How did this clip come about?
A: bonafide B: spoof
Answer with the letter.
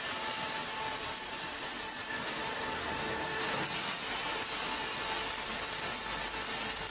A